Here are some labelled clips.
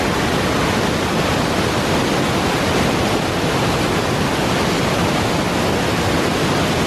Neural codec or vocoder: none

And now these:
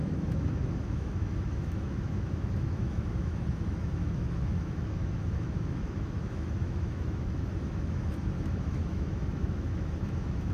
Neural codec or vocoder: autoencoder, DAC-VAE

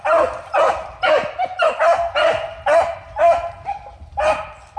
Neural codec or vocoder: none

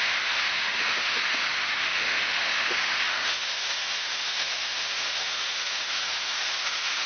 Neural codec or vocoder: autoencoder, DAC-VAE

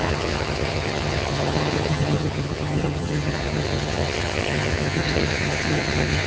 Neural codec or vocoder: vocoder, HiFi-GAN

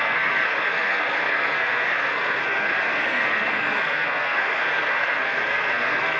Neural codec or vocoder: codec, SNAC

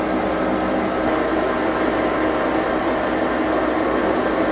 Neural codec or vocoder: none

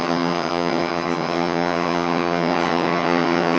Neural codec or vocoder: vocoder, HiFi-GAN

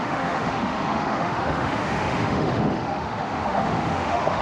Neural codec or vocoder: autoencoder, DAC-VAE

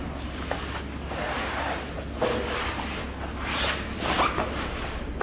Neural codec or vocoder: none